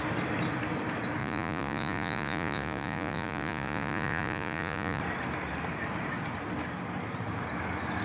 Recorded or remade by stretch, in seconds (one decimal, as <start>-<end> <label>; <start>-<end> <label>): 0.0-1.2 recorded; 1.2-5.0 remade; 5.0-8.0 recorded